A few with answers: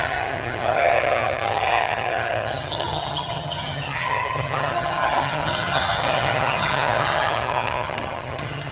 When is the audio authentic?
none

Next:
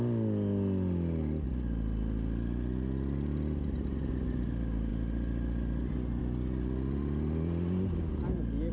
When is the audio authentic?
0.0-8.7

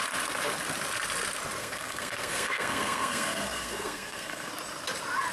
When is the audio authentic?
0.0-1.6; 4.5-5.3

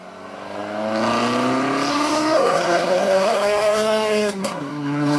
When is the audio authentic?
0.0-1.9

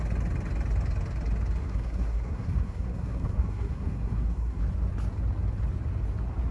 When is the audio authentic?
0.0-1.6; 4.6-6.5

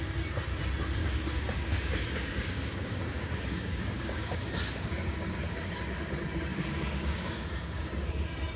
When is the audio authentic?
0.0-1.0; 5.8-6.5; 8.1-8.6

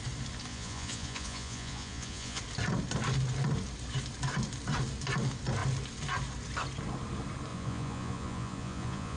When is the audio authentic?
0.0-0.5; 2.4-7.5